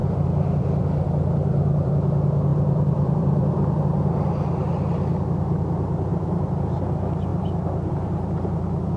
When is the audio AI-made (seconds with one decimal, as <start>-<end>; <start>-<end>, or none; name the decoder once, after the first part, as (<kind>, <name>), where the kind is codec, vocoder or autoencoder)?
0.0-1.9 (vocoder, BigVGAN v2); 2.5-3.8; 6.1-6.8; 7.3-7.9